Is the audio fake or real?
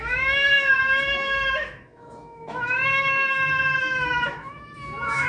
fake